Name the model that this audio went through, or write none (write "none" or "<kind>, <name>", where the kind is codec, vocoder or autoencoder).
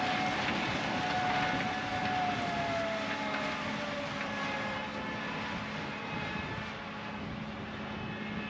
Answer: none